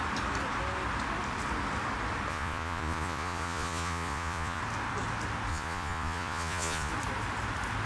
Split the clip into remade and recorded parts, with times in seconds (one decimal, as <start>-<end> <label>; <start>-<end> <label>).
0.0-2.3 recorded; 2.3-4.6 remade; 4.6-5.5 recorded; 5.5-6.9 remade; 6.9-7.9 recorded